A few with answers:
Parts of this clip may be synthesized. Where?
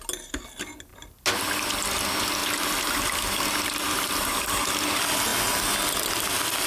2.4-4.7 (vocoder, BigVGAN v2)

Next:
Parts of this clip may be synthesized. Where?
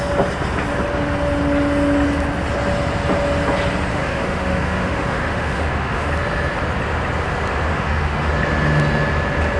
3.9-6.1 (autoencoder, DAC-VAE); 7.7-8.3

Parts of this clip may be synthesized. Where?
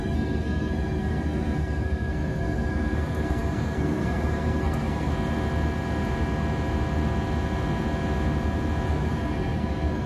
0.0-5.1 (codec, SNAC); 8.9-10.1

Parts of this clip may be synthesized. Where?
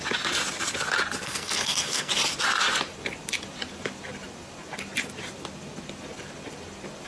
1.2-2.1 (codec, SNAC)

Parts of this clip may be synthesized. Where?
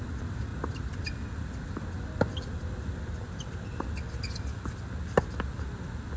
none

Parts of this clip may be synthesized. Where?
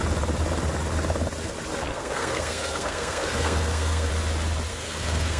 1.9-4.1 (codec, SNAC); 4.7-5.4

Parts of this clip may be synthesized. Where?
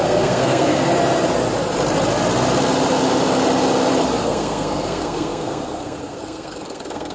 0.0-0.9 (codec, SNAC); 4.2-7.1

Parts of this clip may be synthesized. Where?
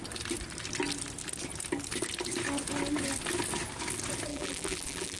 4.3-5.2 (vocoder, BigVGAN v2)